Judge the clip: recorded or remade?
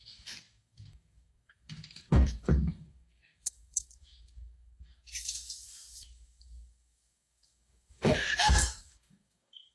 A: remade